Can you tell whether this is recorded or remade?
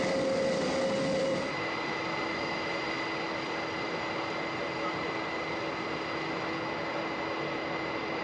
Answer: recorded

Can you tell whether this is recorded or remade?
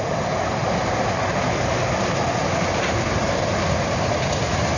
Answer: recorded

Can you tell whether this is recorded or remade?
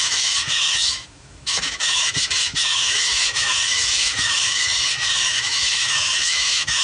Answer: remade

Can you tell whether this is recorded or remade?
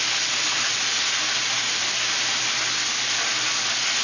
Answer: recorded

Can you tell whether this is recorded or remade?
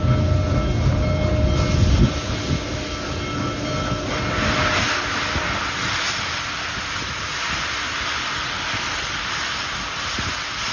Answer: recorded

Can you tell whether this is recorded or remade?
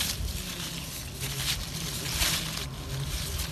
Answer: recorded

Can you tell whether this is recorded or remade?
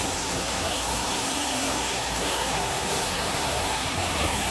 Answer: remade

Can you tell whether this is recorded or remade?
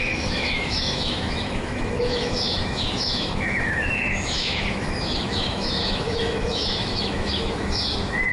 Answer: remade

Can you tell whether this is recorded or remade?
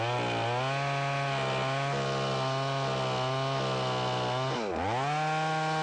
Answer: recorded